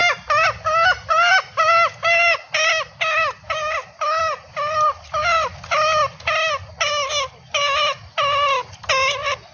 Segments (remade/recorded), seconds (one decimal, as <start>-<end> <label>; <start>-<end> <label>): 0.0-9.5 recorded